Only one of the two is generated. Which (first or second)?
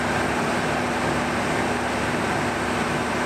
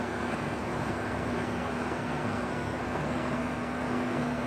second